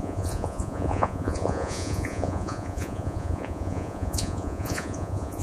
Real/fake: fake